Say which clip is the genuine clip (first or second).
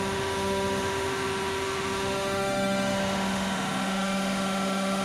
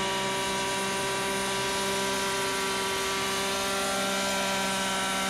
second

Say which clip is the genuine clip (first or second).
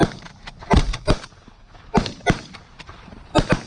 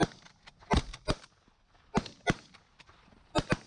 second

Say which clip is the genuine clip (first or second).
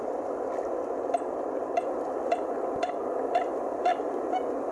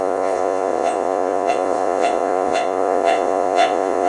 first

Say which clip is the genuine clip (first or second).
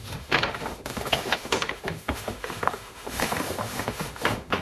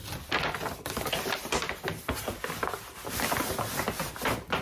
second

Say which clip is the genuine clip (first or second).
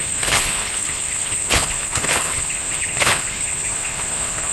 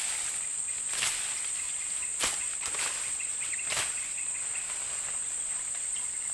second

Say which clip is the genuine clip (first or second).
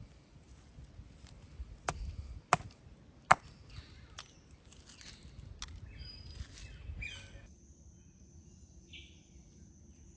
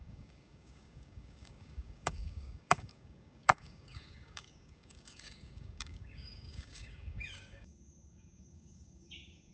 first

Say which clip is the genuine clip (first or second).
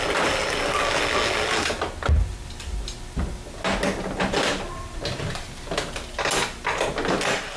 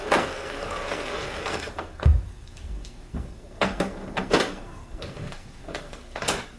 first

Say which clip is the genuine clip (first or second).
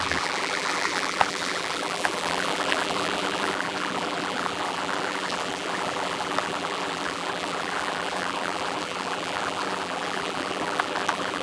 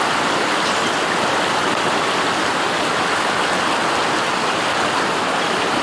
second